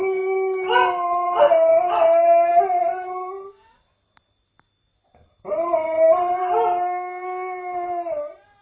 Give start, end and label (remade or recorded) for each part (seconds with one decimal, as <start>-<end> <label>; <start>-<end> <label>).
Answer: 0.0-8.6 recorded